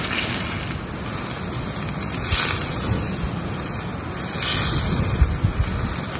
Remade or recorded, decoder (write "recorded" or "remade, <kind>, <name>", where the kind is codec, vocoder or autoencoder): recorded